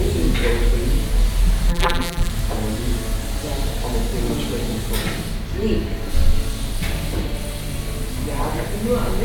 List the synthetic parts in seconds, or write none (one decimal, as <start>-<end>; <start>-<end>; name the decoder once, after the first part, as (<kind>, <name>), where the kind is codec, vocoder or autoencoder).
1.7-2.3 (vocoder, BigVGAN v2)